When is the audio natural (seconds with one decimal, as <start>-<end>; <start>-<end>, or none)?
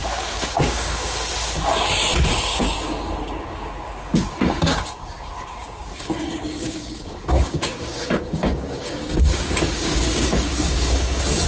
none